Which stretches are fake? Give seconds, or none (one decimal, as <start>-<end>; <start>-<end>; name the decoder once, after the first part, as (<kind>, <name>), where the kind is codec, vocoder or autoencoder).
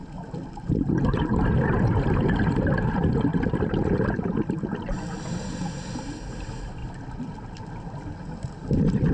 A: 0.0-1.2 (vocoder, BigVGAN v2); 6.8-8.3